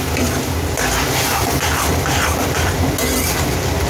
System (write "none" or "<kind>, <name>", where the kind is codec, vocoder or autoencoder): none